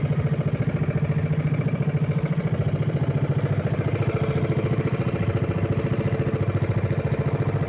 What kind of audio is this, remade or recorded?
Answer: recorded